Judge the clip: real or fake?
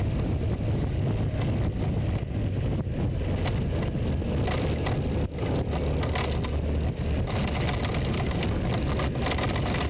real